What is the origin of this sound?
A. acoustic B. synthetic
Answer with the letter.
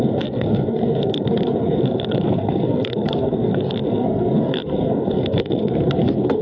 B